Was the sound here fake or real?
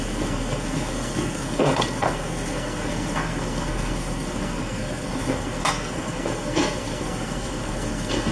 fake